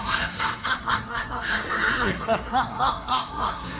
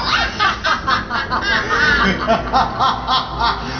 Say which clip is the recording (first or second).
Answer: second